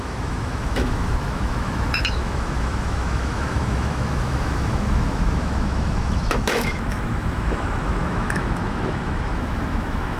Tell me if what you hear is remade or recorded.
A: remade